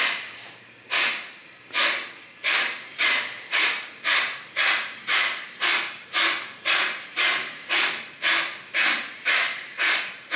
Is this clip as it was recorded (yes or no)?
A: no